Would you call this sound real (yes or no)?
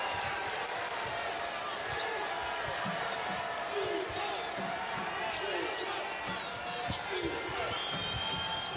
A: yes